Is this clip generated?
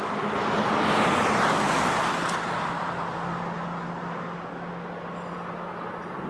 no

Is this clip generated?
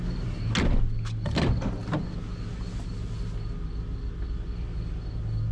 no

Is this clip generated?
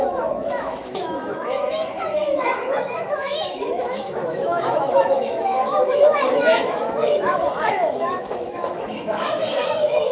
yes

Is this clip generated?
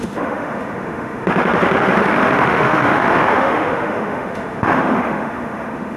yes